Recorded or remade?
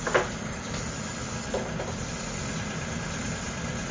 recorded